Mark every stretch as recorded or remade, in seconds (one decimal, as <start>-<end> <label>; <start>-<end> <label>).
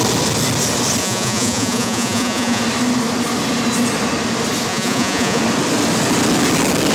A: 0.0-1.0 recorded; 1.0-2.6 remade; 2.6-4.7 recorded; 4.7-5.4 remade; 5.4-6.9 recorded